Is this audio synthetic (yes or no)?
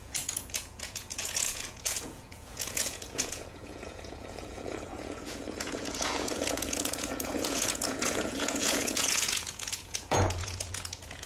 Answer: yes